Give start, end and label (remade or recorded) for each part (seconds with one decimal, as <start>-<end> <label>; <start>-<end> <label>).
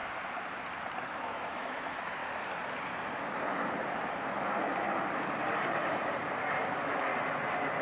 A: 0.0-1.0 recorded; 1.0-2.2 remade; 2.2-6.6 recorded; 6.6-7.1 remade; 7.1-7.8 recorded